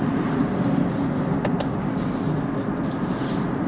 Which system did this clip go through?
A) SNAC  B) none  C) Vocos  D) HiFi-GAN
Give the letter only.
B